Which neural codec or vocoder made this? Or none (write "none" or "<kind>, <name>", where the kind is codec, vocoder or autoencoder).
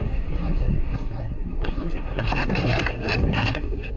codec, SNAC